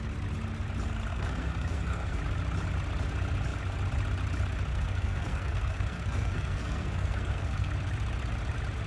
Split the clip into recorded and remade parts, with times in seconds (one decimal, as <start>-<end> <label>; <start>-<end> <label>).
0.0-1.1 recorded; 1.1-2.2 remade; 2.2-4.7 recorded; 4.7-7.7 remade; 7.7-8.9 recorded